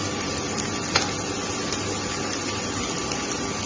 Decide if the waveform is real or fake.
real